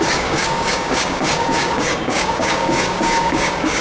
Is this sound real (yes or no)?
no